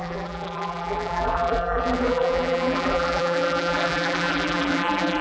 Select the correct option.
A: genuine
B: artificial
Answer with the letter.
B